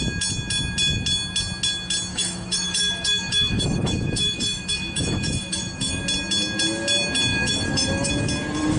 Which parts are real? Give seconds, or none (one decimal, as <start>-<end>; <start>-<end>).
0.0-2.1; 6.0-7.3; 8.1-8.8